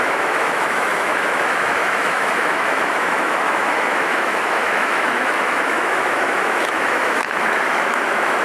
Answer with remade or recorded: remade